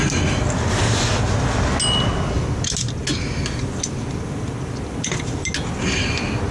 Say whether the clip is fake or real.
real